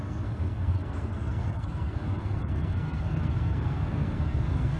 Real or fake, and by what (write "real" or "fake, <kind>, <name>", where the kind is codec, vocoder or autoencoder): fake, codec, SNAC